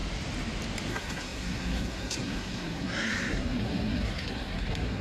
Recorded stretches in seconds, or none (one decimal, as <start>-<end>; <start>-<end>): 0.0-0.9